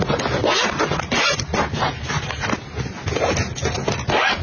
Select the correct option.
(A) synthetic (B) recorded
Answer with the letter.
B